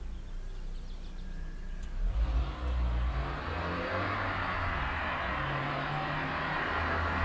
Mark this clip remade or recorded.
recorded